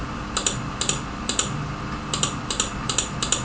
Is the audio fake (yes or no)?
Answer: no